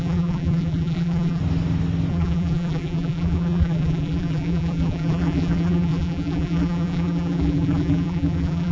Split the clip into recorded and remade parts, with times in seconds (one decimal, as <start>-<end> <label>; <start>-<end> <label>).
0.0-1.4 remade; 1.4-2.1 recorded; 2.1-8.7 remade